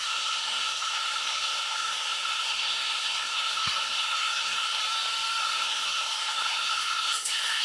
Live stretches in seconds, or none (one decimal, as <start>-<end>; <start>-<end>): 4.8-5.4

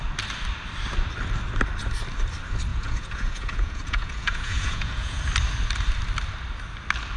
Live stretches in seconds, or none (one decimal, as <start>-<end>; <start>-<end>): 0.0-2.7; 5.2-7.2

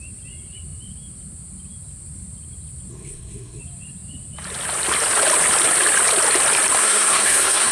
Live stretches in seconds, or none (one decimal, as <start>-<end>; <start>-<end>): 0.0-2.9; 3.6-6.8

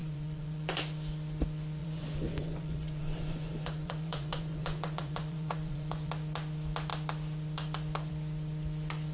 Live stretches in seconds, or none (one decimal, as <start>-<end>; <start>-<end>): 0.8-1.8; 6.1-9.1

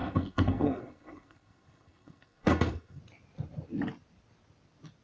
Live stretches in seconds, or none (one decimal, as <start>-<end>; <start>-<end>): 3.0-5.0

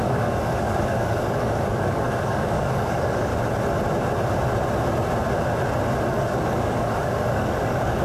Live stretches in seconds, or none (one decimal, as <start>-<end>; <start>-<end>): 3.3-6.1

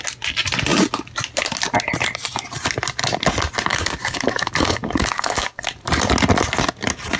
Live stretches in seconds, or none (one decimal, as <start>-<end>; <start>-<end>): 0.0-3.7; 5.7-7.2

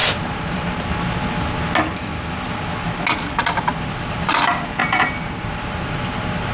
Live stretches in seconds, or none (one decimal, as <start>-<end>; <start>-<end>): 0.9-4.8